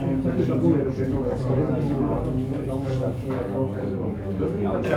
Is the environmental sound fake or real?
fake